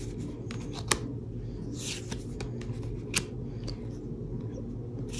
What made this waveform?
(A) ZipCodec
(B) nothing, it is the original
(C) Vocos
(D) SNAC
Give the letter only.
B